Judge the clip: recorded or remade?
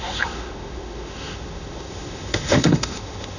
remade